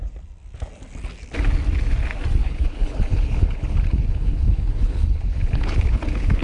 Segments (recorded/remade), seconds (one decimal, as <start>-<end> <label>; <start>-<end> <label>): 0.0-2.4 recorded; 2.4-6.4 remade